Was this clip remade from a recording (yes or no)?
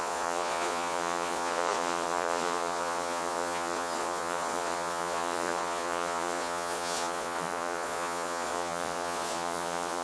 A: yes